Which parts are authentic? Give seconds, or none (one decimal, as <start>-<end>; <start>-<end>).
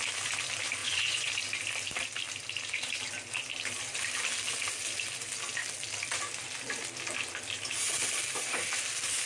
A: 0.0-0.8; 1.3-9.3